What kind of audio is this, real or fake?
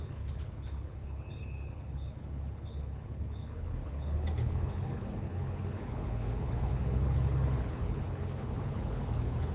fake